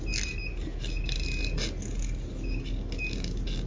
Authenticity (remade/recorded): recorded